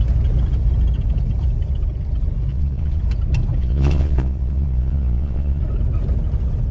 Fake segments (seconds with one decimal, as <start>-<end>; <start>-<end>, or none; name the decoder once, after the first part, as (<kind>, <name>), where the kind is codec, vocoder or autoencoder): 2.5-3.0 (vocoder, Vocos); 3.6-5.6